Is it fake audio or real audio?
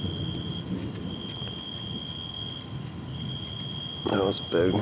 real